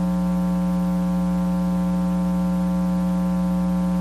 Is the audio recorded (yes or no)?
yes